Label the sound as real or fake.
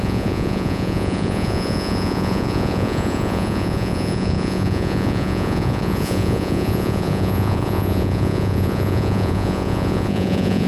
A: fake